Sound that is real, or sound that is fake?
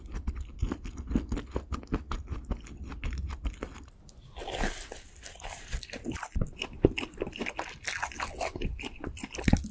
real